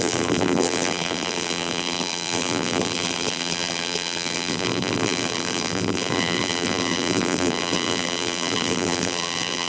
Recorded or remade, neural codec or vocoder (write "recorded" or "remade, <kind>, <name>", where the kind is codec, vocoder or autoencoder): remade, vocoder, BigVGAN v2